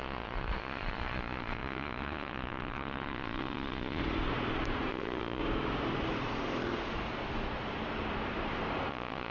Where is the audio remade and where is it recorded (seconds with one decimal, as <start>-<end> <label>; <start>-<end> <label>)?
0.0-4.0 remade; 4.0-4.9 recorded; 4.9-5.4 remade; 5.4-8.9 recorded; 8.9-9.3 remade